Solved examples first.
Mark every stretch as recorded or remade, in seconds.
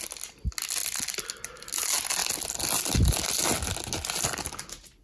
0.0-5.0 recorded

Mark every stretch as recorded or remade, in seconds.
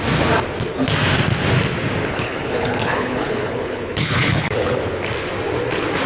0.0-2.0 recorded; 2.0-4.9 remade; 4.9-6.1 recorded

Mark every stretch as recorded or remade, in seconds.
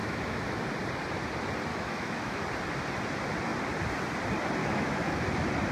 0.0-0.6 remade; 0.6-1.7 recorded; 1.7-2.4 remade; 2.4-4.6 recorded; 4.6-5.2 remade; 5.2-5.7 recorded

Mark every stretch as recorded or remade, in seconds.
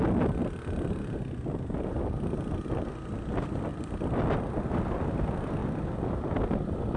0.0-3.7 recorded; 3.7-4.7 remade; 4.7-5.6 recorded; 5.6-6.5 remade; 6.5-7.0 recorded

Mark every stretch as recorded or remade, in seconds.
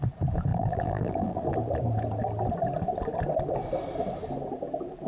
0.0-0.5 recorded; 0.5-1.4 remade; 1.4-5.1 recorded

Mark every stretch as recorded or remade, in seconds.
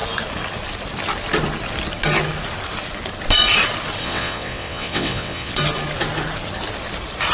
0.0-4.0 recorded; 4.0-5.5 remade; 5.5-7.3 recorded